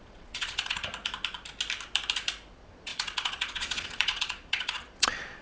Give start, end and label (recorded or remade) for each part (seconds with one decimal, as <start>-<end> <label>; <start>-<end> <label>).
0.0-0.9 remade; 0.9-2.5 recorded; 2.5-5.4 remade